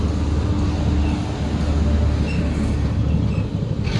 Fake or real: real